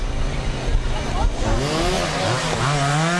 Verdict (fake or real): real